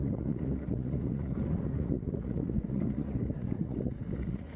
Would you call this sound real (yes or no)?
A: no